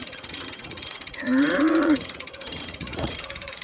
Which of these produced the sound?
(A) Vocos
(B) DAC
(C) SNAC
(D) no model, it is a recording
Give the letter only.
A